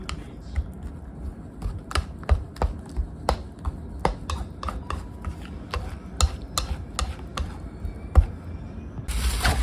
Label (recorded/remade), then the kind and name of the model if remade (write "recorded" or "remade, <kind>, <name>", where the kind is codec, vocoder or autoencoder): recorded